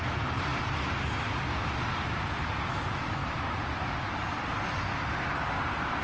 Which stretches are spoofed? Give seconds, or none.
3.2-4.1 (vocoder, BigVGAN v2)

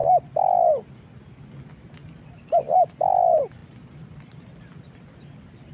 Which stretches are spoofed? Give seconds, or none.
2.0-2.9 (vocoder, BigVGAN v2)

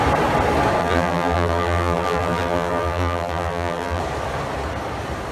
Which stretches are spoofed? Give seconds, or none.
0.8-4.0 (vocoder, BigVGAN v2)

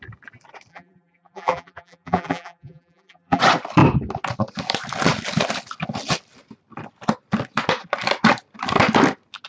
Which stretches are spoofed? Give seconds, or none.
0.7-3.4 (vocoder, BigVGAN v2)

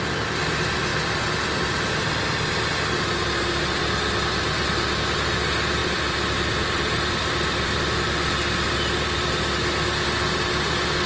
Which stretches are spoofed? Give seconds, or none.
5.8-8.3 (vocoder, BigVGAN v2)

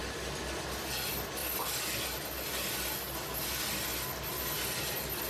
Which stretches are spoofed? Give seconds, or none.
none

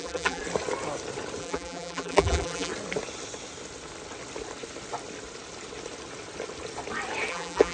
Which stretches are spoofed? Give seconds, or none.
0.0-0.4 (vocoder, BigVGAN v2); 1.4-2.7; 7.3-7.7

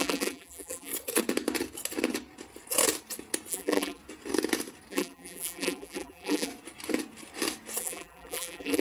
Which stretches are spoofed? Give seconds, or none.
0.0-0.9 (vocoder, BigVGAN v2); 3.5-4.0; 4.9-6.5; 7.8-8.8